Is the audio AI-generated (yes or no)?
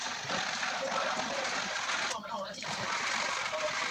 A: yes